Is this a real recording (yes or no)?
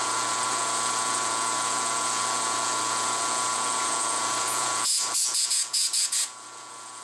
no